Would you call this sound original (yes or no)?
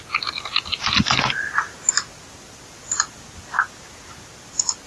yes